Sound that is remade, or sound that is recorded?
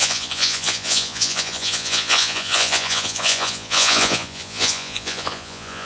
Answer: remade